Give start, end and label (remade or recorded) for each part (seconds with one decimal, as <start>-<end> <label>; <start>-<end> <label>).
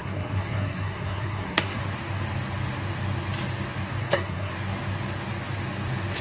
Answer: 0.0-1.8 remade; 1.8-4.0 recorded; 4.0-4.5 remade; 4.5-6.2 recorded